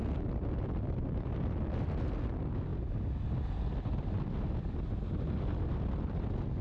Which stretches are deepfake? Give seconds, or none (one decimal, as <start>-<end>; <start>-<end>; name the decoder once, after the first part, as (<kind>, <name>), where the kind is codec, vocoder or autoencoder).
none